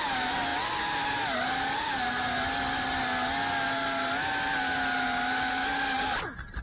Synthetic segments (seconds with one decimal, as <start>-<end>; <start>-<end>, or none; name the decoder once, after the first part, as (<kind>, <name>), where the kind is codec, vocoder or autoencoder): none